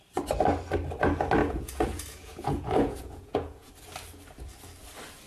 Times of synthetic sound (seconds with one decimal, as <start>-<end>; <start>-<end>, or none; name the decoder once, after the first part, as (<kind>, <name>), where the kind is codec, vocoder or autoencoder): 1.4-3.7 (vocoder, Vocos)